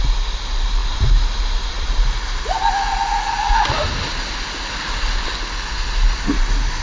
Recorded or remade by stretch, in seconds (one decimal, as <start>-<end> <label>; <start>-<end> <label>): 0.0-6.8 recorded